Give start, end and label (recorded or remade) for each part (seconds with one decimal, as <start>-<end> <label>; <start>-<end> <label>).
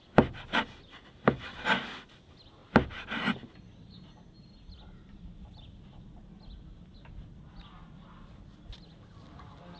0.0-9.8 recorded